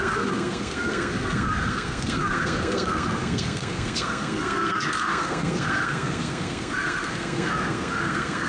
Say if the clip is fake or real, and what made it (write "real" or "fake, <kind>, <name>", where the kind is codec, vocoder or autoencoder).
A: fake, codec, SNAC